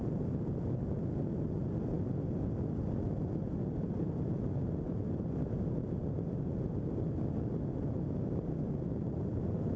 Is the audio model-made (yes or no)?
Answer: no